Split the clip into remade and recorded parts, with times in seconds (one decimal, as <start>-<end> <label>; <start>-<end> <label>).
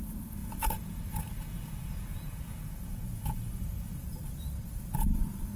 0.0-0.4 recorded; 0.4-3.8 remade; 3.8-5.6 recorded